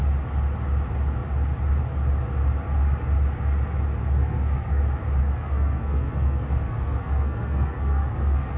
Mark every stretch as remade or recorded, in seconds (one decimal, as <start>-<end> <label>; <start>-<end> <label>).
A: 0.0-4.2 recorded; 4.2-4.8 remade; 4.8-5.2 recorded; 5.2-8.6 remade